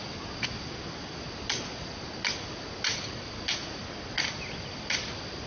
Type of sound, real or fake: real